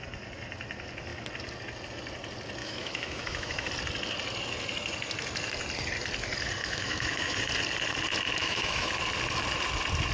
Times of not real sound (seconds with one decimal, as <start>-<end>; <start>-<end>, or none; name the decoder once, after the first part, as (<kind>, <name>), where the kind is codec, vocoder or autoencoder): 2.6-3.7 (autoencoder, DAC-VAE); 6.6-7.4; 8.4-8.9